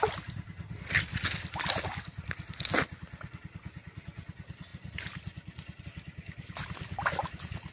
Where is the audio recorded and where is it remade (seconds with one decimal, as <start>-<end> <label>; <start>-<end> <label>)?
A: 0.0-4.7 recorded; 4.7-5.8 remade; 5.8-7.7 recorded